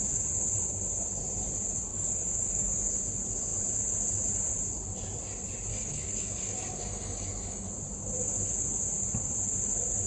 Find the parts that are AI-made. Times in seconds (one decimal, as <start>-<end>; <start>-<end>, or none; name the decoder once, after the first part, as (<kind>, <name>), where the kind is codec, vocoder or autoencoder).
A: 1.9-2.9 (codec, DAC); 5.7-7.7